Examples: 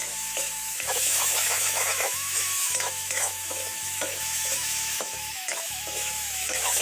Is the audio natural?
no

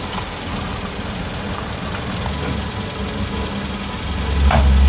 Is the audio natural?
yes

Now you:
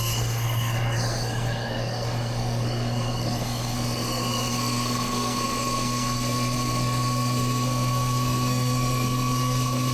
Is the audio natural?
no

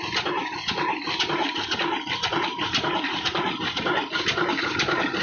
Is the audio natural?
no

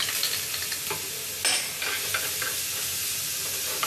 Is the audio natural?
yes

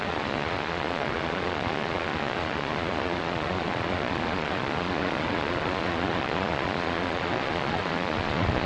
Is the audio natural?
no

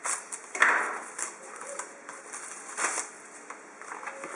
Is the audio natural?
yes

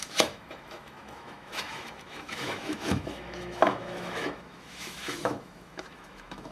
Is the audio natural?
no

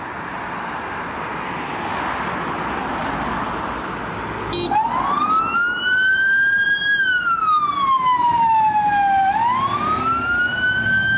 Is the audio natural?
yes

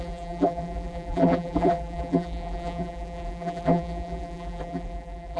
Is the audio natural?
no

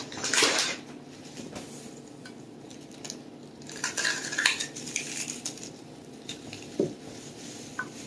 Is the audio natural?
no